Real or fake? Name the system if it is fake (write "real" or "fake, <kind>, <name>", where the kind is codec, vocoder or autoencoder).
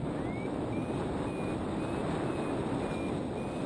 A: real